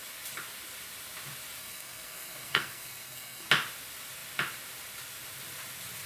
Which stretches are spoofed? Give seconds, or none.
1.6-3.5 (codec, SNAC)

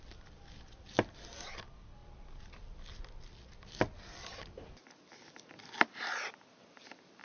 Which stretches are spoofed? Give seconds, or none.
none

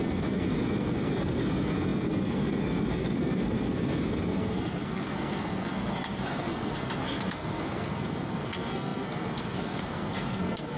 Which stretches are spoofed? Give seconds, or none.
0.0-10.8 (codec, SNAC)